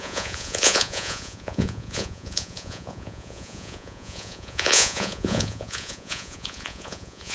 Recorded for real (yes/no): no